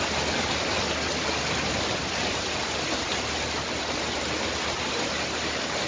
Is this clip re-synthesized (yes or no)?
no